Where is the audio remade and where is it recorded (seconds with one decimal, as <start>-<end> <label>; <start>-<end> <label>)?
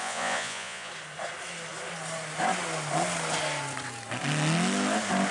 0.0-0.9 remade; 0.9-5.3 recorded